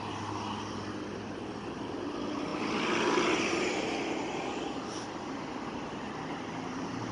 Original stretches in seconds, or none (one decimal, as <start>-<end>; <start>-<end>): 0.0-7.1